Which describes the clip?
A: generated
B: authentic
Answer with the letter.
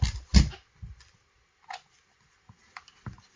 B